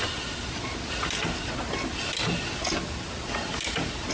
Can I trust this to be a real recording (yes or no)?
yes